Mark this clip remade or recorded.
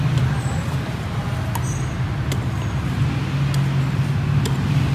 recorded